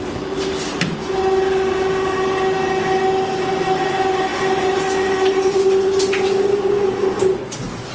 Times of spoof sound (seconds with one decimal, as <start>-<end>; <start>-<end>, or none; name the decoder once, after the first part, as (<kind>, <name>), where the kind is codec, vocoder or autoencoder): none